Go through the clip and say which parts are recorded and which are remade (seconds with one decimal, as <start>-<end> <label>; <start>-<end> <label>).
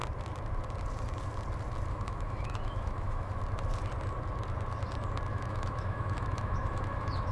0.0-1.9 recorded; 1.9-3.4 remade; 3.4-5.3 recorded; 5.3-7.3 remade